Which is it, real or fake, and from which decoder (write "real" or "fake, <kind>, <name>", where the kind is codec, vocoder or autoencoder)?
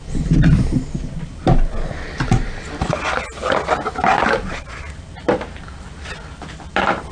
real